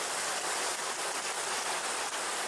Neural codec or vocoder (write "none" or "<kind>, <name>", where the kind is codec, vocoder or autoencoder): none